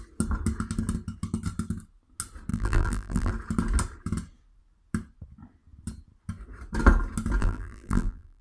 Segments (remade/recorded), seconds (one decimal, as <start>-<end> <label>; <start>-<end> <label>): 0.0-2.5 recorded; 2.5-3.3 remade; 3.3-7.4 recorded; 7.4-8.4 remade